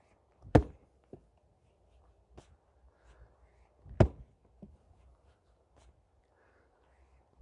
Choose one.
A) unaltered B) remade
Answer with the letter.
A